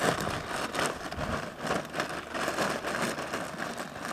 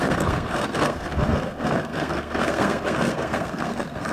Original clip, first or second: first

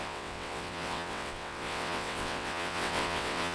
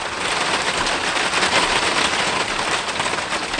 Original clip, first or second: second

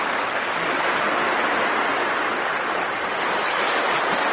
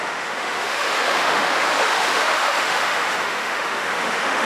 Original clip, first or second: first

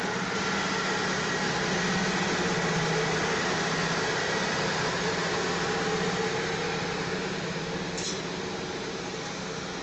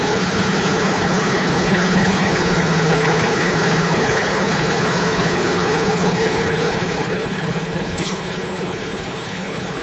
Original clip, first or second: first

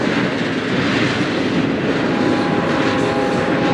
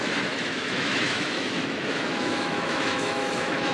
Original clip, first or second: first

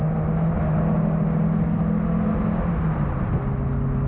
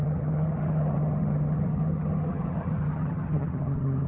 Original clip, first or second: first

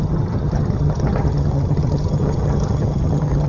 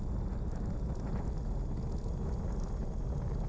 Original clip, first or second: second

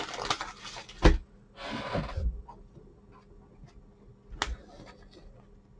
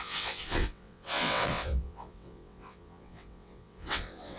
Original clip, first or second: first